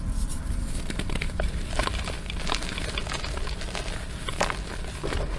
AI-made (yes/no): no